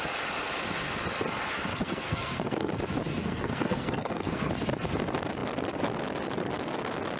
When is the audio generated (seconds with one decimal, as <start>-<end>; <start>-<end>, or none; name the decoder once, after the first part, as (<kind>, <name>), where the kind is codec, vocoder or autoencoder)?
1.7-2.7 (codec, SNAC); 3.2-4.5